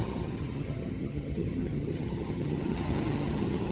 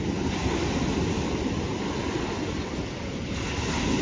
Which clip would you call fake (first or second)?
first